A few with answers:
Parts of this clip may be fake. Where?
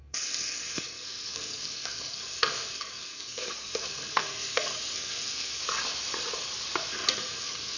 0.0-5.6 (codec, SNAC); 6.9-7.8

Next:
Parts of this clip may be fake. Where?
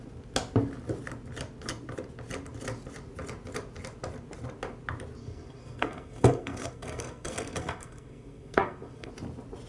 5.2-9.1 (codec, SNAC)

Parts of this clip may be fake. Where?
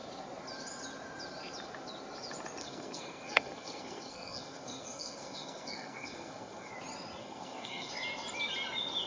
2.6-6.7 (codec, SNAC); 7.2-7.9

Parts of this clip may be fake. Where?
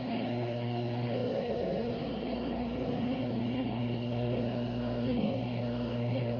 0.0-6.4 (codec, SNAC)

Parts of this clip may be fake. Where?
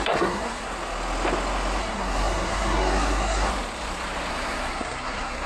0.0-0.7 (codec, SNAC); 1.8-3.5; 4.3-5.5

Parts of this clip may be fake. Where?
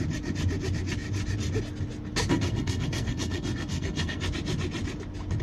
2.3-4.2 (codec, SNAC)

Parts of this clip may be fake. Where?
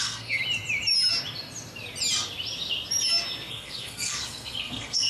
0.0-0.4 (codec, SNAC); 3.5-5.1